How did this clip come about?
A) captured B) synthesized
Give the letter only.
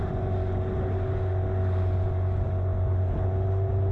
A